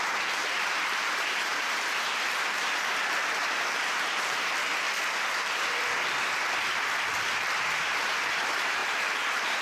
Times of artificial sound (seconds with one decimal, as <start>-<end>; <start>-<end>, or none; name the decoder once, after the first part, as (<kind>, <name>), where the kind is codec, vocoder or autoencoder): 0.0-4.7 (vocoder, BigVGAN v2); 7.7-9.6